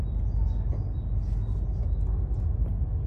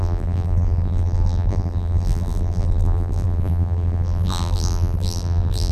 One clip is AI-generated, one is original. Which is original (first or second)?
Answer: first